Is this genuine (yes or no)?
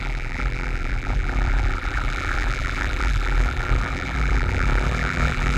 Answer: no